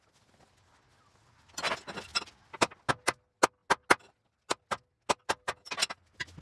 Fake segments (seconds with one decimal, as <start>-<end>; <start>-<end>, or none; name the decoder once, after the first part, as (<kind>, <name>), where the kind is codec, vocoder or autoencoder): none

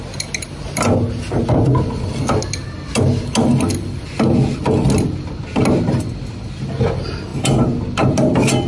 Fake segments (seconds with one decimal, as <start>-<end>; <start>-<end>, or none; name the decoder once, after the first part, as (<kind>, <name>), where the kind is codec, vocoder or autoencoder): none

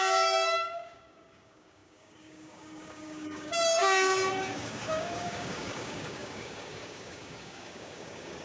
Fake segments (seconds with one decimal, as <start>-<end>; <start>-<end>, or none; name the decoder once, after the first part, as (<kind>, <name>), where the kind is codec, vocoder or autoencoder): 0.0-8.4 (codec, DAC)

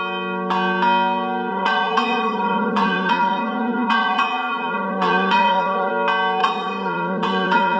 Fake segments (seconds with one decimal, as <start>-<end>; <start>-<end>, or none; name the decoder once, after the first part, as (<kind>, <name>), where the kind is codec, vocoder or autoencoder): 1.5-5.9 (vocoder, Vocos); 6.4-7.8

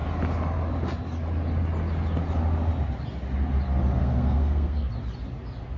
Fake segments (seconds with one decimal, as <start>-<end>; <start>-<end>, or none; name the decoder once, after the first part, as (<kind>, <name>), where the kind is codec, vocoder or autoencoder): 4.0-4.9 (codec, SNAC)

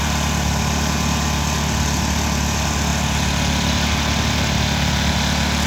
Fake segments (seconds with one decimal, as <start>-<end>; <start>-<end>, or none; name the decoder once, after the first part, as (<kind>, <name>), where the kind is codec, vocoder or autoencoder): none